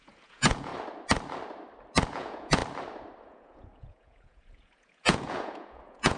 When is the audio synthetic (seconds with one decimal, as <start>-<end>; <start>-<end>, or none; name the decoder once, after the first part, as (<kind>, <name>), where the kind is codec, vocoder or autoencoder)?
0.0-0.7 (vocoder, Vocos); 2.1-2.6; 3.2-6.2